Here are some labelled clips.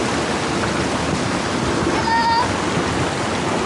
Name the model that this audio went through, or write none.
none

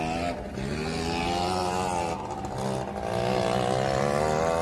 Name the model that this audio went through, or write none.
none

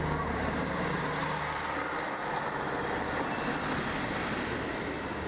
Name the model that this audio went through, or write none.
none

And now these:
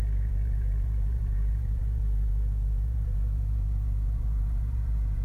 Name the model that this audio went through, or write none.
vocoder, Vocos